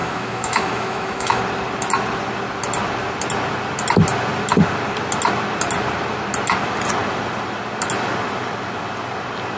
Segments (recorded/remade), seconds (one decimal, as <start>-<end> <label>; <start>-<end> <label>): 0.0-1.4 remade; 1.4-9.6 recorded